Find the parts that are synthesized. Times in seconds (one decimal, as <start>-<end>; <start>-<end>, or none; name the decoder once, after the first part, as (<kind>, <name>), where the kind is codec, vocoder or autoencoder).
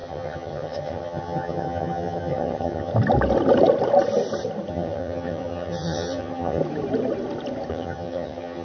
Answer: 0.0-2.9 (vocoder, HiFi-GAN); 4.7-6.6; 7.7-8.6